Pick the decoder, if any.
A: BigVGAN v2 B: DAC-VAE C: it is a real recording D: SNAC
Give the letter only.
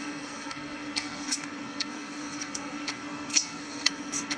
D